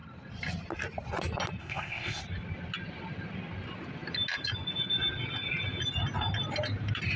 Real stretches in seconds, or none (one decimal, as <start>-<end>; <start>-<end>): 0.0-1.6; 2.2-7.2